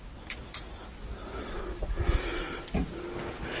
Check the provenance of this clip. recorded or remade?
recorded